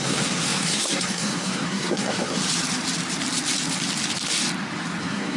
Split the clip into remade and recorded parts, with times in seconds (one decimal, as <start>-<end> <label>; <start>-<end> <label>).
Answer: 0.0-2.4 remade; 2.4-5.0 recorded; 5.0-5.4 remade

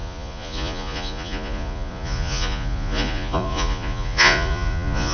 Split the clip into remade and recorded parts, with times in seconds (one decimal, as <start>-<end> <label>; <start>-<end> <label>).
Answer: 0.0-5.1 remade

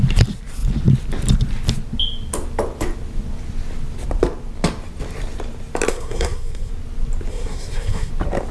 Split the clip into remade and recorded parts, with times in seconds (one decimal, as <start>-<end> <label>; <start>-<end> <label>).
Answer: 0.0-5.9 recorded; 5.9-6.7 remade; 6.7-7.3 recorded; 7.3-8.1 remade; 8.1-8.5 recorded

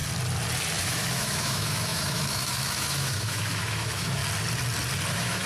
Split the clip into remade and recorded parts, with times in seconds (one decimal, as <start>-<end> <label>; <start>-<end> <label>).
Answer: 0.0-0.8 recorded; 0.8-4.2 remade; 4.2-5.1 recorded; 5.1-5.5 remade

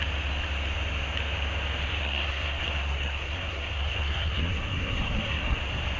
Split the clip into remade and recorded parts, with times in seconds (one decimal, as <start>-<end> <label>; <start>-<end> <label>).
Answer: 0.0-2.0 recorded; 2.0-5.6 remade; 5.6-6.0 recorded

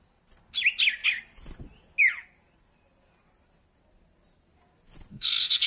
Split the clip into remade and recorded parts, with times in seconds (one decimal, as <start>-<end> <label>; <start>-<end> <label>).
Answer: 0.0-5.1 recorded; 5.1-5.7 remade

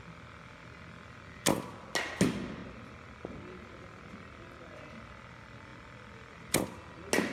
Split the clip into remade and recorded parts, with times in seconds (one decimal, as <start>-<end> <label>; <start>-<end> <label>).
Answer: 0.0-7.3 recorded

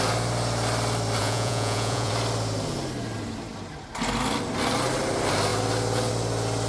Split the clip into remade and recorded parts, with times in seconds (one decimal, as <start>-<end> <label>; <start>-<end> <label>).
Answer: 0.0-1.2 recorded; 1.2-2.1 remade; 2.1-6.7 recorded